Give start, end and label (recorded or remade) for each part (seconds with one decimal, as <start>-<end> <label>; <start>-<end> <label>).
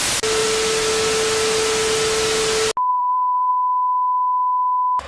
0.0-0.4 recorded; 0.4-0.9 remade; 0.9-2.9 recorded; 2.9-3.5 remade; 3.5-5.1 recorded